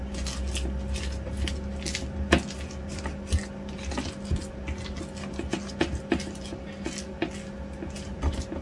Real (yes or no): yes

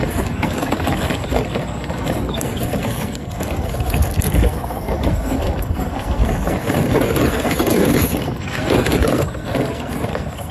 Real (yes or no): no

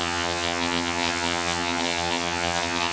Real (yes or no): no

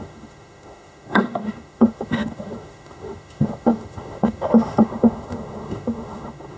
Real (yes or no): no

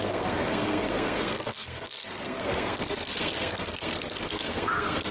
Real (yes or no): no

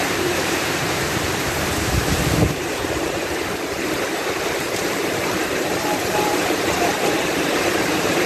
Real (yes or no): no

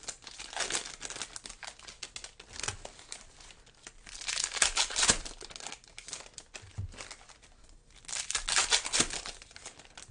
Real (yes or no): yes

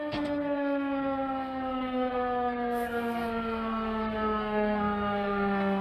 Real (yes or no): no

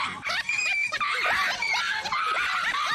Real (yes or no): yes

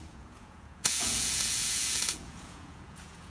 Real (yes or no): no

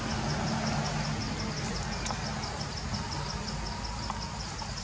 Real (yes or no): yes